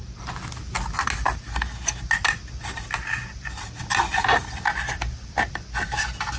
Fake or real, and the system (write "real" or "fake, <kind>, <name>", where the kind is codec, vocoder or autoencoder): real